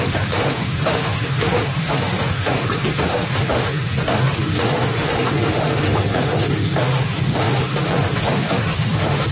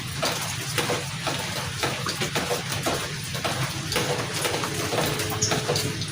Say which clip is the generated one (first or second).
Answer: first